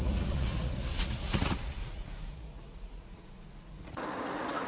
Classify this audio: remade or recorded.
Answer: remade